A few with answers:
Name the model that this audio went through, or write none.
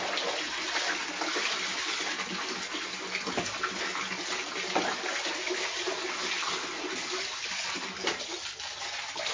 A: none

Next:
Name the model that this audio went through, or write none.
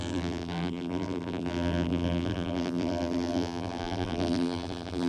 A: vocoder, BigVGAN v2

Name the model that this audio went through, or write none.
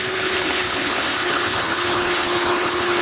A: codec, HILCodec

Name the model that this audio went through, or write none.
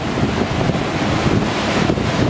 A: none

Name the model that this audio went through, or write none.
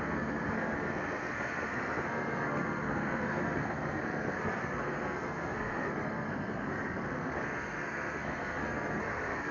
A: codec, SNAC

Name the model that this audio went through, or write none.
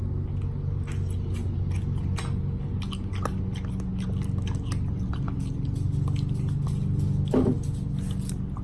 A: none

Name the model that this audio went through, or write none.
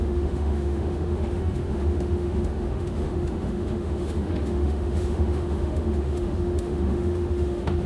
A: autoencoder, DAC-VAE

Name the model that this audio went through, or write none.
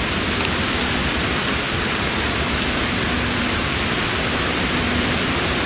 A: none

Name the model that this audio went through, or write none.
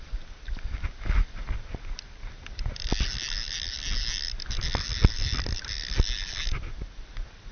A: none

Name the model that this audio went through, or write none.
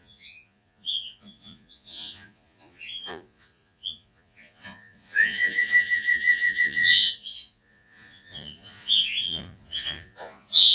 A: vocoder, Vocos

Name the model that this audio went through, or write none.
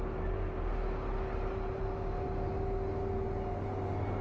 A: none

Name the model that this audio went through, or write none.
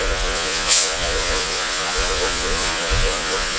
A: vocoder, Vocos